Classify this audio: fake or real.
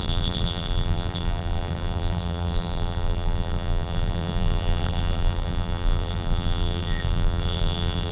fake